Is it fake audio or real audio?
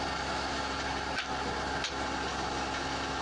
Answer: real